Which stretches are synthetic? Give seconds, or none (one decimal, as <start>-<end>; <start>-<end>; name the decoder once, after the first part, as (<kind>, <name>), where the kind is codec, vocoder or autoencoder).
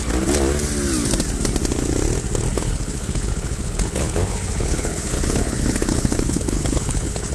2.5-7.3 (codec, HILCodec)